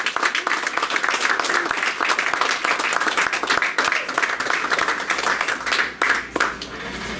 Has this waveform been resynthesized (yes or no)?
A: no